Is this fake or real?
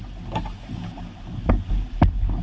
real